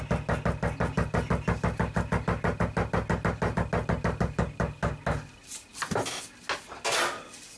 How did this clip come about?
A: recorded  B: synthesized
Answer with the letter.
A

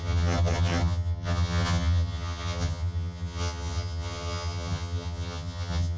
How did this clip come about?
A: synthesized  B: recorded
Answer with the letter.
A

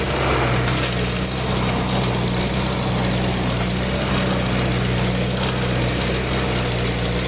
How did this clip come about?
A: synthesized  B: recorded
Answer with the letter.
B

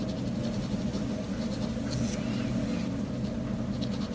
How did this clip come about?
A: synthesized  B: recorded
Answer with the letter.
B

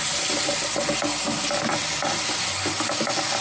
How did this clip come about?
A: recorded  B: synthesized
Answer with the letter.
A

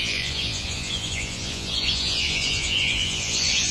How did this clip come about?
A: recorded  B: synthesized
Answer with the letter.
B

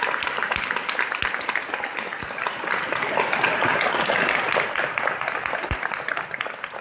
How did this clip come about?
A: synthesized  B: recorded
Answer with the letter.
B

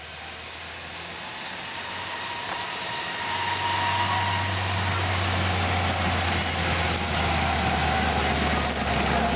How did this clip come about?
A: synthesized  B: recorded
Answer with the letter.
B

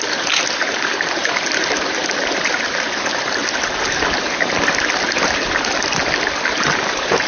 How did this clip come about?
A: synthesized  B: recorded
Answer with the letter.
B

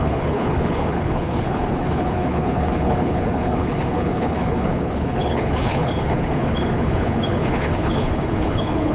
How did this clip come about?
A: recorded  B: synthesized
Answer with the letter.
B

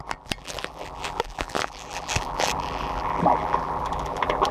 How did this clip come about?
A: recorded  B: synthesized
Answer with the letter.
B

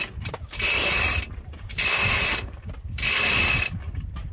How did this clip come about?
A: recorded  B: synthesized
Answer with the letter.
A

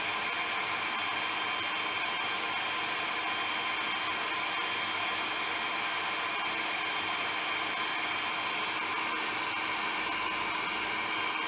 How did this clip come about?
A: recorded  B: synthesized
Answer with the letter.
A